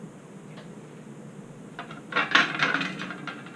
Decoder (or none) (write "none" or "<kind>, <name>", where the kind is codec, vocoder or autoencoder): none